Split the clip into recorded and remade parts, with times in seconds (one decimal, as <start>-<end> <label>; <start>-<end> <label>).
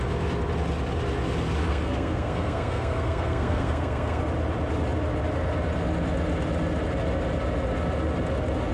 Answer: 0.0-1.7 recorded; 1.7-4.2 remade; 4.2-8.7 recorded